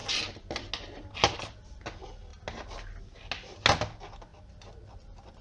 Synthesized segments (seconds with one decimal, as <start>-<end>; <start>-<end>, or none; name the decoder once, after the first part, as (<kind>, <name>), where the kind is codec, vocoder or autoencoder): none